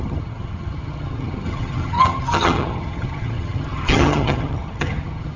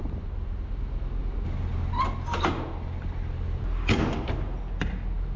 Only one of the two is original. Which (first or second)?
second